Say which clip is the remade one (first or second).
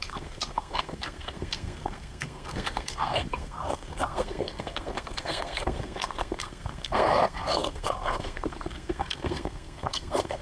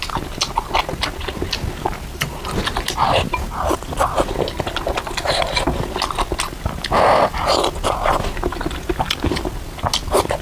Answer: first